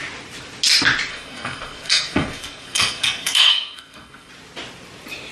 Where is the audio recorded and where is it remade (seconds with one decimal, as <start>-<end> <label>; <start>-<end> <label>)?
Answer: 0.0-1.1 recorded; 1.1-4.3 remade; 4.3-5.3 recorded